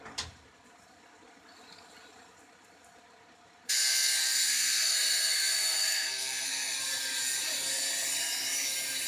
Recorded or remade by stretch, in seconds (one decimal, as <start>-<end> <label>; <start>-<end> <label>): 0.0-3.9 recorded; 3.9-6.8 remade; 6.8-9.1 recorded

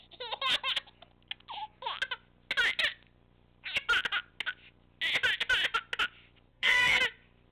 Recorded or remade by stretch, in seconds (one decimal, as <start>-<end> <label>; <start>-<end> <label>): 0.0-6.5 recorded; 6.5-7.0 remade; 7.0-7.5 recorded

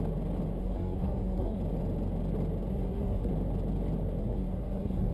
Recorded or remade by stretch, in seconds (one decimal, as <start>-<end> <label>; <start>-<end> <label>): 0.0-0.6 recorded; 0.6-1.6 remade; 1.6-2.7 recorded; 2.7-3.3 remade; 3.3-4.2 recorded; 4.2-5.1 remade

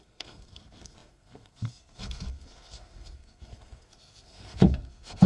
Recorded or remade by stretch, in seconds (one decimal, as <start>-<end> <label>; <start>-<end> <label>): 0.0-5.3 remade

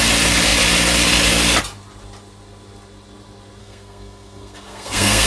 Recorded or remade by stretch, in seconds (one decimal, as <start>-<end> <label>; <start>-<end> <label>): 0.0-3.6 recorded; 3.6-5.3 remade

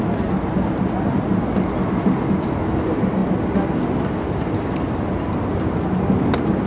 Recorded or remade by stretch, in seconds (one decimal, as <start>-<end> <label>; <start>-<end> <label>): 0.0-6.7 recorded

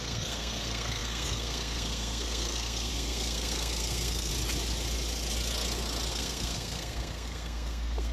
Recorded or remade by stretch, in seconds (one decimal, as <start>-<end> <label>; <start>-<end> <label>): 0.0-4.3 remade; 4.3-6.1 recorded; 6.1-8.1 remade

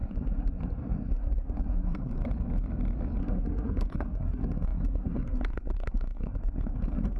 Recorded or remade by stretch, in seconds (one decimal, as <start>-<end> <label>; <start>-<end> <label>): 0.0-2.1 remade; 2.1-3.2 recorded; 3.2-7.2 remade